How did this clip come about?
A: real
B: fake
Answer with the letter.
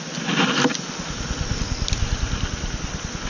A